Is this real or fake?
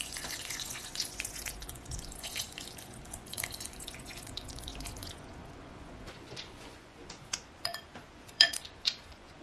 fake